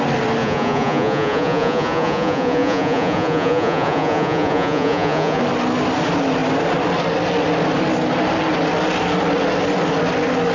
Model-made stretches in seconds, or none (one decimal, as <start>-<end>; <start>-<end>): 0.4-5.4